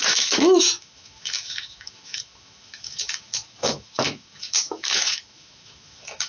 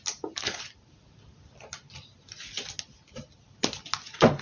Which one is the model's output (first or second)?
first